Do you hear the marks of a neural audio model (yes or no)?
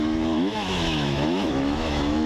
yes